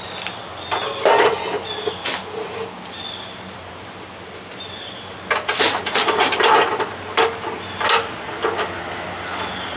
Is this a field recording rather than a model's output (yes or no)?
yes